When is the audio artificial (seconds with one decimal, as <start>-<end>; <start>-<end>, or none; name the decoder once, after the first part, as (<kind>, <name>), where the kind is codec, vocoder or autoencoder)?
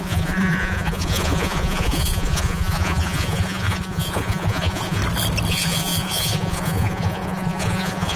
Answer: 0.0-5.0 (vocoder, Vocos); 5.5-8.2